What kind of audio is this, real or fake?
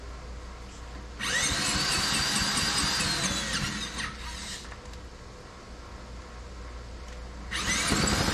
real